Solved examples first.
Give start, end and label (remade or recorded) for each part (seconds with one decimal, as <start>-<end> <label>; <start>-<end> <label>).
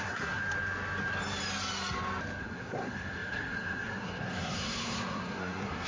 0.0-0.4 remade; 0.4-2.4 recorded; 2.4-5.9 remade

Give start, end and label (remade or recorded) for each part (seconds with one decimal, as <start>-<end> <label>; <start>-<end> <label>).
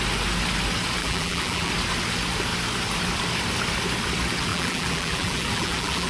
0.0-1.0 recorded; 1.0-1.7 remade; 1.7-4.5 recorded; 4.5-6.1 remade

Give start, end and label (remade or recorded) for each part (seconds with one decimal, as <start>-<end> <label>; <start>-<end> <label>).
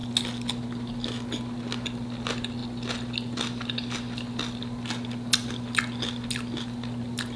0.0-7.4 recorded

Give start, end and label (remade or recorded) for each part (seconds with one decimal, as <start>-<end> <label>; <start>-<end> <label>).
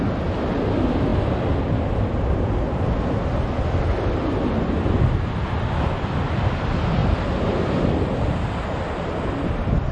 0.0-9.9 recorded